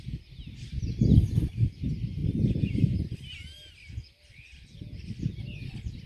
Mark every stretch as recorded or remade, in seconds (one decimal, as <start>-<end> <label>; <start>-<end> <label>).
0.0-6.1 recorded